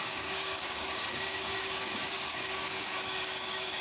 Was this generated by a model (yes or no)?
yes